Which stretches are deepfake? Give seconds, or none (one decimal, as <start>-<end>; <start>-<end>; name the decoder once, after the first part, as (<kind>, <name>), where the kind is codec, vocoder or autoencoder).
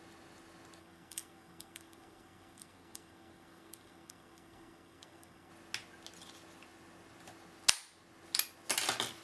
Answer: 0.8-5.5 (codec, SNAC)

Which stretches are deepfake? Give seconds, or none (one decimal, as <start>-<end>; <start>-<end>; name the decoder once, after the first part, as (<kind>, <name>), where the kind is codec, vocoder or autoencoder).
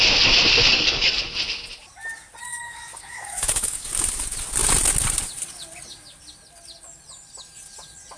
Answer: 0.7-1.2 (codec, DAC); 2.5-4.1